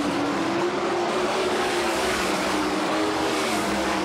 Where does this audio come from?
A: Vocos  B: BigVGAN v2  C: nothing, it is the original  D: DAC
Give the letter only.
D